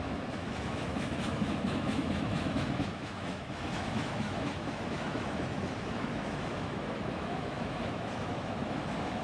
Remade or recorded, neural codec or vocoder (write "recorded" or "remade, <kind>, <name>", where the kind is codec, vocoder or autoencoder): remade, autoencoder, DAC-VAE